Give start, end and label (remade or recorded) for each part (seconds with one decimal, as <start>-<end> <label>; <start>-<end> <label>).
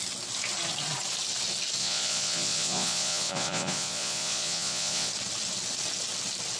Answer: 0.0-1.8 recorded; 1.8-5.1 remade; 5.1-6.6 recorded